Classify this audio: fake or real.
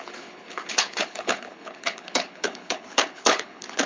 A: fake